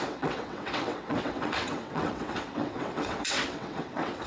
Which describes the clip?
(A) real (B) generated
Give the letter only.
B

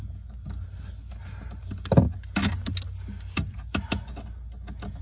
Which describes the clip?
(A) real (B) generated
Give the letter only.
A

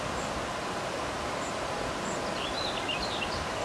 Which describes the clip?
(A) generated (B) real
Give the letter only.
B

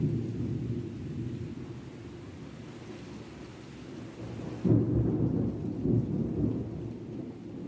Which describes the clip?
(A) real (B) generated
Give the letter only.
A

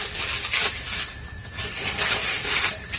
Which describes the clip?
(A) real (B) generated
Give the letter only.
A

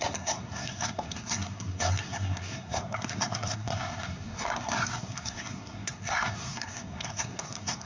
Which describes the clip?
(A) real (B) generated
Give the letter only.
B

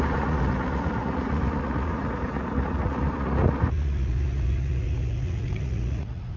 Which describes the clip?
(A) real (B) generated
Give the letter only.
B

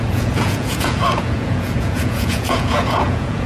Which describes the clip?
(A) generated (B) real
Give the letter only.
A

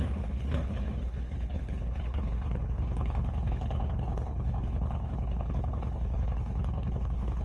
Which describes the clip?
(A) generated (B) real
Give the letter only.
A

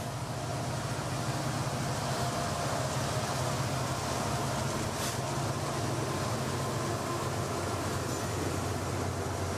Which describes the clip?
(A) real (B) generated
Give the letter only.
A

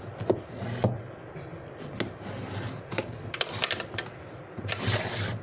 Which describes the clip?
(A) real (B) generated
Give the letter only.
A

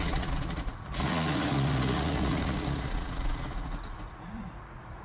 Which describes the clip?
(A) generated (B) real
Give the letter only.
A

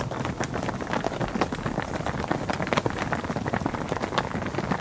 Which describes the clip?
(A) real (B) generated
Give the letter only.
A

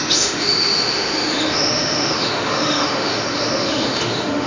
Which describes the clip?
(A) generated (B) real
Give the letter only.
A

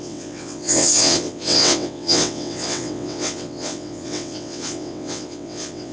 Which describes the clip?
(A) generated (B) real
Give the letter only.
A